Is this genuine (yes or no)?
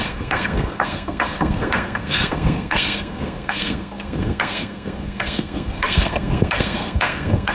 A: no